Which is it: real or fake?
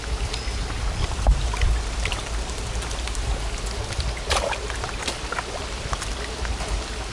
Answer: real